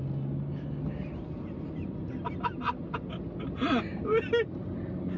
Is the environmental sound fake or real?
real